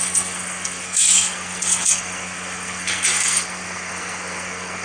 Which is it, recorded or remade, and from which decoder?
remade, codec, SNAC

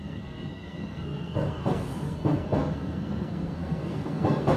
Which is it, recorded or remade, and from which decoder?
remade, codec, SNAC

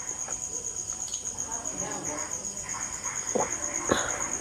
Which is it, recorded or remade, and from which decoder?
recorded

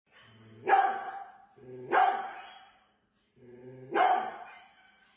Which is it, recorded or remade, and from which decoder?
recorded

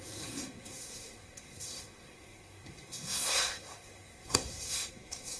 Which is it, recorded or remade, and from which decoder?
remade, codec, SNAC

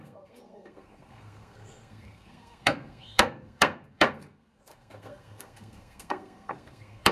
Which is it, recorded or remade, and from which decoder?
remade, codec, SNAC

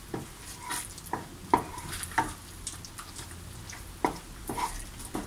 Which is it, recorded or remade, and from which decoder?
recorded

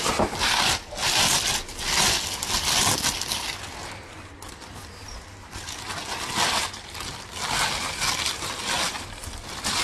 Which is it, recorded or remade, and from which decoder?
recorded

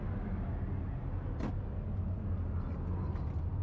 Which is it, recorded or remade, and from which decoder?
recorded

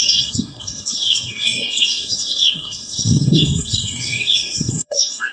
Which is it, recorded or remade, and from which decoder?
remade, codec, SNAC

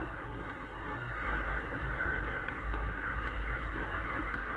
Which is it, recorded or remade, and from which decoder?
remade, codec, SNAC